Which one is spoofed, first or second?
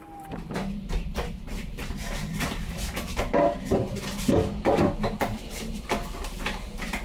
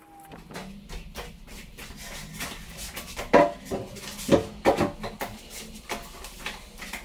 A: first